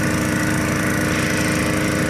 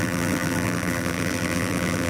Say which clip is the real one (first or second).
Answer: first